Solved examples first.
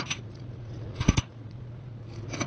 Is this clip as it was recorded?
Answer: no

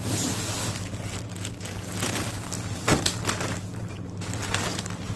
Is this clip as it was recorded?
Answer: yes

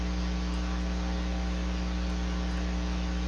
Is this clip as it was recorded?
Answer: yes